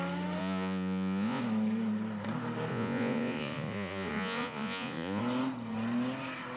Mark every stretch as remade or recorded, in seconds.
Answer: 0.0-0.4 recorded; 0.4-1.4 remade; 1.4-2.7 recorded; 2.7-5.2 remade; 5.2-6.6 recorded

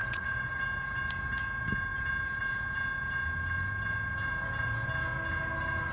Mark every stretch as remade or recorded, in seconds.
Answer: 0.0-0.5 remade; 0.5-5.9 recorded

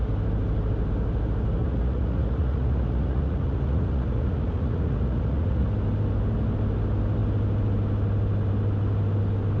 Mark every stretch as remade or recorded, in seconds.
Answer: 0.0-1.6 recorded; 1.6-5.7 remade; 5.7-9.6 recorded

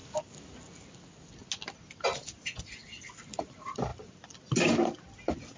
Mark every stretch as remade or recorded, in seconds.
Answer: 0.0-5.6 recorded

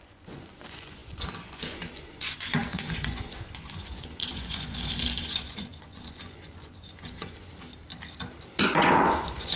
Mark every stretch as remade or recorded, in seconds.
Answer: 0.0-7.5 remade; 7.5-8.6 recorded; 8.6-9.6 remade

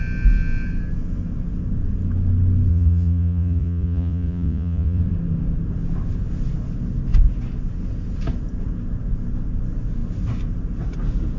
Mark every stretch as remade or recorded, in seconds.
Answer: 0.0-2.7 recorded; 2.7-5.0 remade; 5.0-11.4 recorded

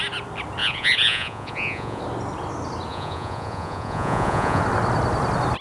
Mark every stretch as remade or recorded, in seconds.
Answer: 0.0-0.6 recorded; 0.6-2.0 remade; 2.0-2.9 recorded; 2.9-4.6 remade; 4.6-5.6 recorded

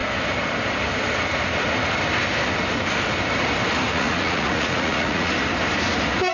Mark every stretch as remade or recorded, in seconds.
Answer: 0.0-3.9 recorded; 3.9-5.3 remade; 5.3-6.3 recorded